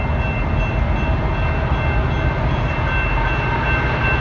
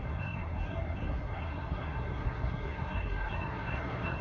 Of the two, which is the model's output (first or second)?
second